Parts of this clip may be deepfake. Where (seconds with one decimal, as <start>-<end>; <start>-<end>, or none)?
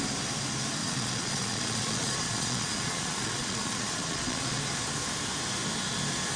0.8-4.6